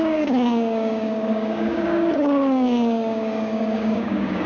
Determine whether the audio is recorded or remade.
remade